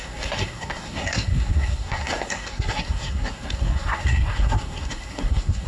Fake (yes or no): yes